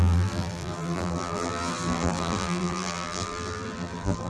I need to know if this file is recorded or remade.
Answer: remade